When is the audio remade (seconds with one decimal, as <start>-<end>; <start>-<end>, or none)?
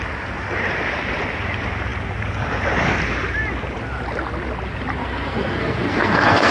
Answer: 5.0-6.5